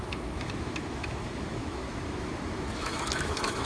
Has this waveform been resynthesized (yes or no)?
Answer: yes